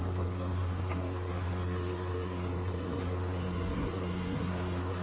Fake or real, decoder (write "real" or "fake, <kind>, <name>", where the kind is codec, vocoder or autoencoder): fake, codec, SNAC